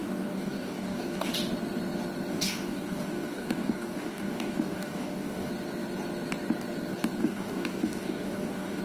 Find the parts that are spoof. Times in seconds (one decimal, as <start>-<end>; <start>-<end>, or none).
0.0-1.3; 2.3-5.5; 7.2-8.8